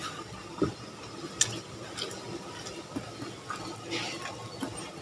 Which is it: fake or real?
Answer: real